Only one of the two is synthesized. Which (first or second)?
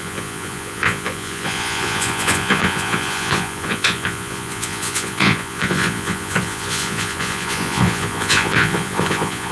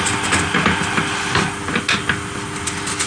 first